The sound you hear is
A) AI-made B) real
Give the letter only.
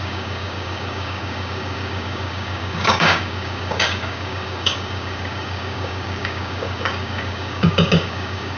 A